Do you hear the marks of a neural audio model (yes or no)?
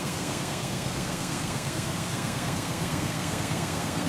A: yes